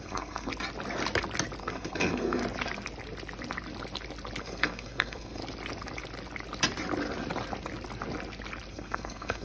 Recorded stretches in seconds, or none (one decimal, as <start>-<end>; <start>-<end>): 0.5-1.6; 2.4-4.4; 5.4-8.7

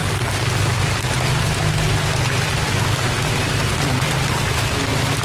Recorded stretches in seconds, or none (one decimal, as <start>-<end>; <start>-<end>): 0.0-3.7; 4.3-5.2

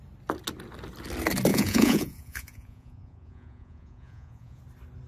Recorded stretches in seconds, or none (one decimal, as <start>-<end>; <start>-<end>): 0.0-1.5; 4.6-5.1